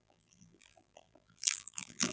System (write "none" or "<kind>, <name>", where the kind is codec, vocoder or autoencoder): vocoder, BigVGAN v2